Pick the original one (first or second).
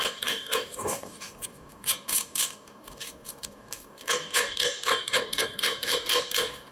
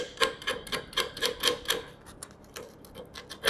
second